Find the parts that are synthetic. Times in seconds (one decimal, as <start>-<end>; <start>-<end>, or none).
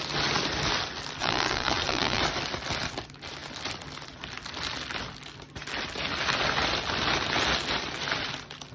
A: 1.2-2.2